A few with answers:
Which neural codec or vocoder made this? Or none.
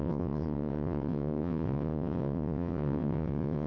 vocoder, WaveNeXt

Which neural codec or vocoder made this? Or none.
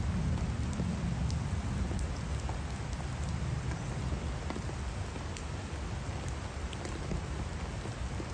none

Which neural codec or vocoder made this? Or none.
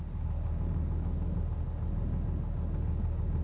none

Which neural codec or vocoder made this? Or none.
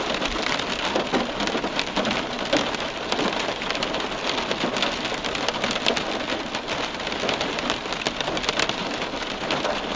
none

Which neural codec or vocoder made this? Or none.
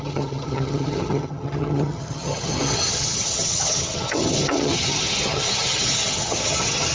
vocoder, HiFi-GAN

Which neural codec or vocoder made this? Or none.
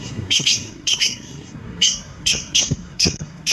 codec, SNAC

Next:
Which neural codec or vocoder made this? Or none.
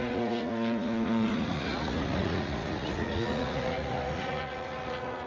vocoder, Vocos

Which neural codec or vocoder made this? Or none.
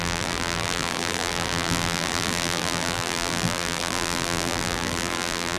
vocoder, BigVGAN v2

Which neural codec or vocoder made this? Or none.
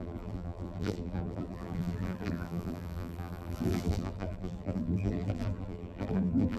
vocoder, BigVGAN v2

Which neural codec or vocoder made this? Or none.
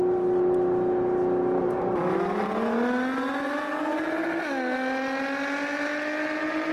none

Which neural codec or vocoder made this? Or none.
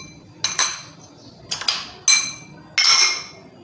none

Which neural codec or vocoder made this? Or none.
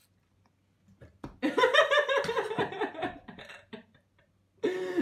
none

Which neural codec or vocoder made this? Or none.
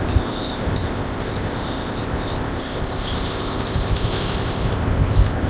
codec, ZipCodec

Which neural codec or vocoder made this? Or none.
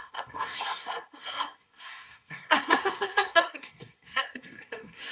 codec, SNAC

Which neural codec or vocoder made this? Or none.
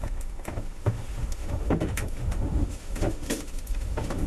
autoencoder, DAC-VAE